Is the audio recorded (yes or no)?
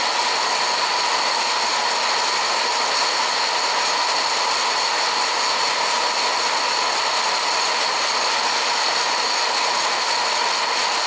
yes